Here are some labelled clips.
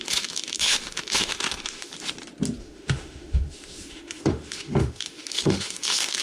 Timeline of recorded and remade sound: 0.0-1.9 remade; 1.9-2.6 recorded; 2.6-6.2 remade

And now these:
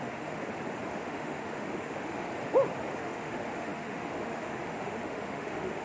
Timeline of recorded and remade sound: 0.0-0.4 remade; 0.4-0.9 recorded; 0.9-2.3 remade; 2.3-3.0 recorded; 3.0-5.8 remade

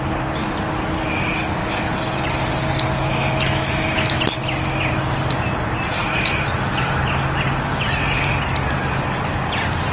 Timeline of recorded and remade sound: 0.0-3.1 recorded; 3.1-4.2 remade; 4.2-9.9 recorded

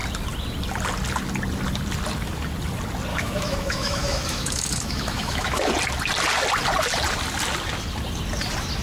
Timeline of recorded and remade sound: 0.0-3.1 recorded; 3.1-5.7 remade; 5.7-8.8 recorded

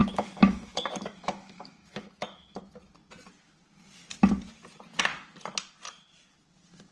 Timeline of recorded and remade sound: 0.0-2.6 remade; 2.6-6.9 recorded